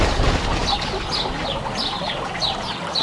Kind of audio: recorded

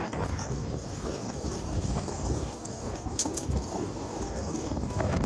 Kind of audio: remade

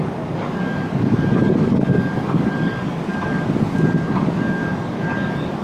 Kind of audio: remade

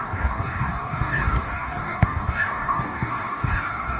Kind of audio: remade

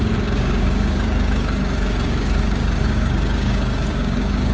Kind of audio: remade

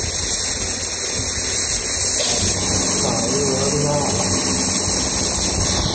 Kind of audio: recorded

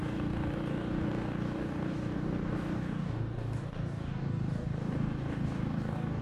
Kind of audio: remade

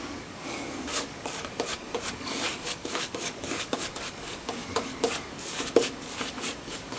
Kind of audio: remade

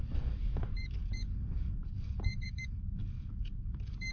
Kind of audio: remade